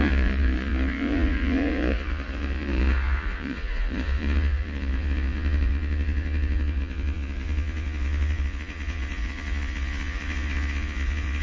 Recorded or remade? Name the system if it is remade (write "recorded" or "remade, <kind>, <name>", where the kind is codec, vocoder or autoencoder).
remade, vocoder, Vocos